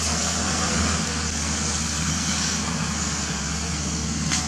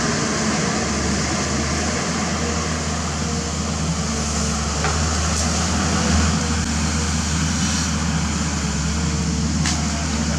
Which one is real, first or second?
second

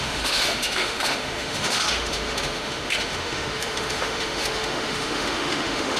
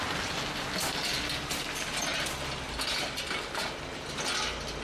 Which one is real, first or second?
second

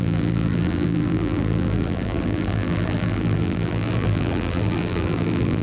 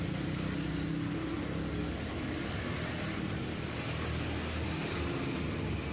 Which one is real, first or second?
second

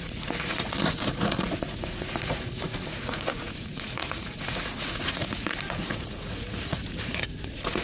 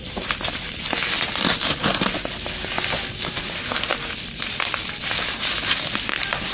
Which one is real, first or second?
second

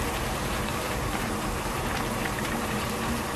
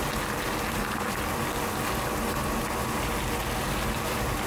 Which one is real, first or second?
second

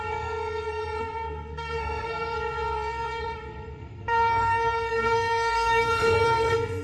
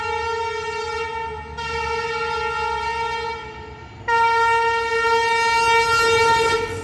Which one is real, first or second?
second